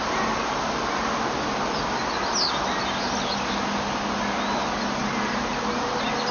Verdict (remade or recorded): recorded